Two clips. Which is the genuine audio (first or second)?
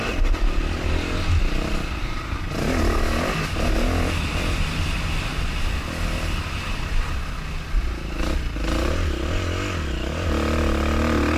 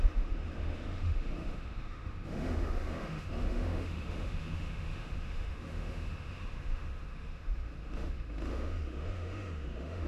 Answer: first